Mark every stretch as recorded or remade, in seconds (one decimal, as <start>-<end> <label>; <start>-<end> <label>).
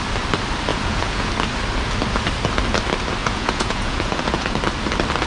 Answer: 0.0-0.7 recorded; 0.7-1.3 remade; 1.3-3.2 recorded; 3.2-4.6 remade; 4.6-5.3 recorded